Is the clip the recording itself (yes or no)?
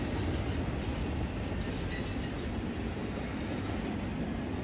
yes